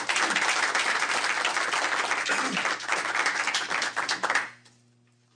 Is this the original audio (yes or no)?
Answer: yes